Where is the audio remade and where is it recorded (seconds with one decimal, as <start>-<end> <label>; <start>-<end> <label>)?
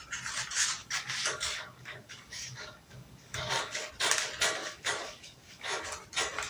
0.0-0.8 recorded; 0.8-3.9 remade; 3.9-4.6 recorded; 4.6-5.9 remade; 5.9-6.5 recorded